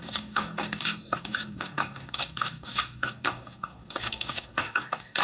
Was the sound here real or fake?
fake